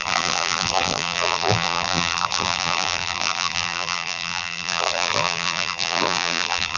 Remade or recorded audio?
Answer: remade